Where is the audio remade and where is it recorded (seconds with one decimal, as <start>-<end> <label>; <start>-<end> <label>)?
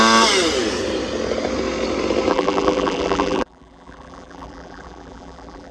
0.0-2.3 recorded; 2.3-5.7 remade